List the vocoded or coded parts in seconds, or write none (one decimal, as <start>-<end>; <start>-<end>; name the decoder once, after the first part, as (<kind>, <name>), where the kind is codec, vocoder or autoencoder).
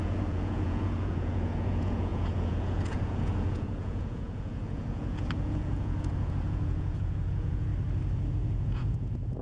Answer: 0.0-7.7 (vocoder, Vocos); 8.3-9.4